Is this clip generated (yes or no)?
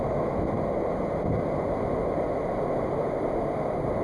no